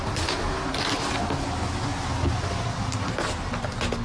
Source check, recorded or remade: recorded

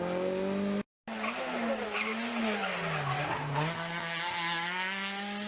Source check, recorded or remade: recorded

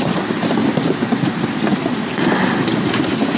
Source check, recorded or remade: recorded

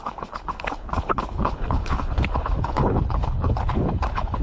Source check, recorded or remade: remade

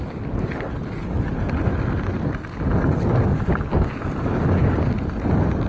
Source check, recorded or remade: recorded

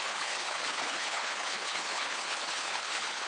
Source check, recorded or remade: remade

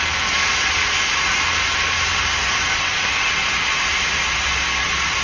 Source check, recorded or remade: recorded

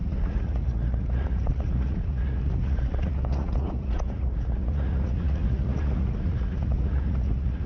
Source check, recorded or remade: remade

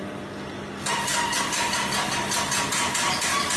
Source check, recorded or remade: recorded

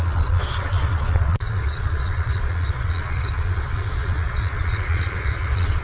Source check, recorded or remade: remade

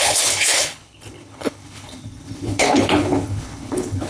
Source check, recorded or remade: remade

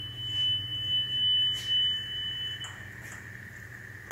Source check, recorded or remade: recorded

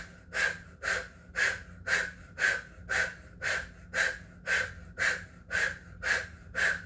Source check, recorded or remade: recorded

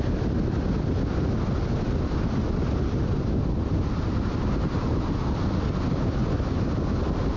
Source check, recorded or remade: recorded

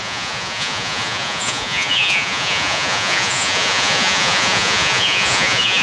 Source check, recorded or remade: remade